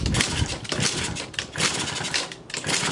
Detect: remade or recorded recorded